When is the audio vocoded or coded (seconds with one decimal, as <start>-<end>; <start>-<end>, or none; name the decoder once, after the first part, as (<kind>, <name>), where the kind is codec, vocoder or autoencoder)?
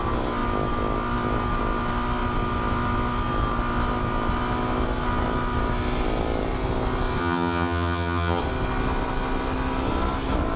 7.2-8.4 (vocoder, HiFi-GAN)